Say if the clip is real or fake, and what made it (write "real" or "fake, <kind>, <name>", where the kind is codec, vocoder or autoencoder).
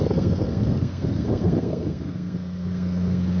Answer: fake, codec, SNAC